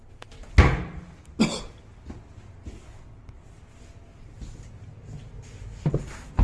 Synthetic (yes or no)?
no